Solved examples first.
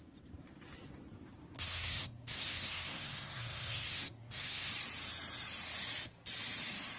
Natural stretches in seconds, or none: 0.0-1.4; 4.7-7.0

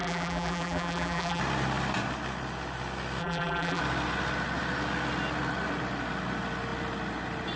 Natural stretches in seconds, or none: 1.4-3.2; 3.8-7.6

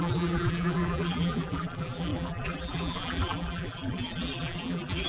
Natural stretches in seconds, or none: none

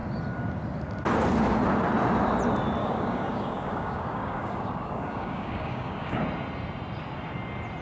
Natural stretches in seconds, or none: 0.0-2.8; 6.2-7.8

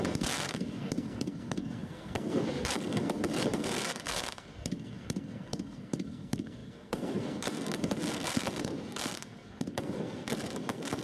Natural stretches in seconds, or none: none

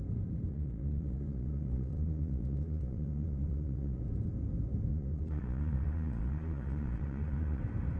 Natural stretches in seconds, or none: 0.0-0.5; 4.0-4.9; 7.6-8.0

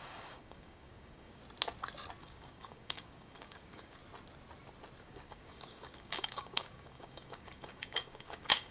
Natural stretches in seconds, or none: 1.4-2.2; 4.0-5.0